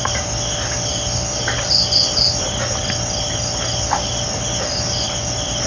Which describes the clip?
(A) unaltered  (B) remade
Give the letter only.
A